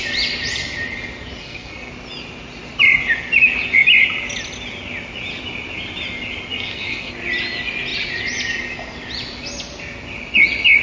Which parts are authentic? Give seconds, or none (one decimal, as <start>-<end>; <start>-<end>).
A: 0.0-1.4; 1.9-6.5; 7.1-10.8